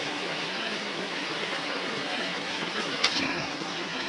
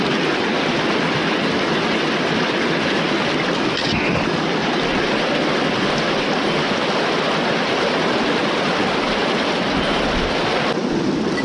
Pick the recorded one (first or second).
second